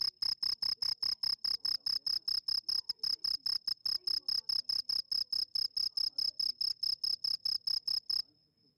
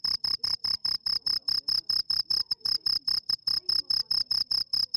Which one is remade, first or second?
second